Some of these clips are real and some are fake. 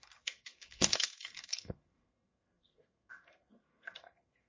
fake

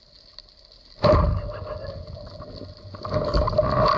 real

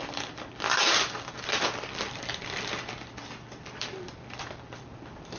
fake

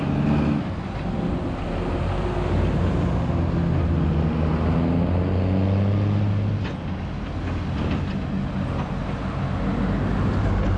real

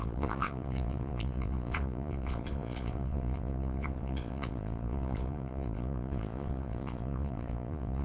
fake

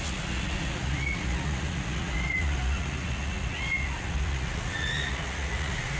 fake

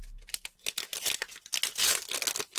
real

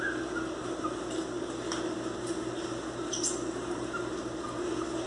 real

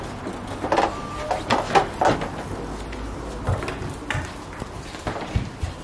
real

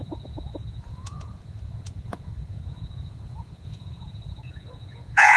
fake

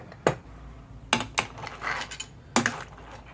real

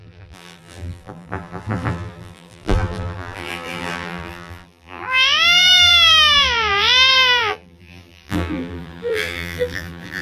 fake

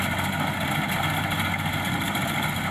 real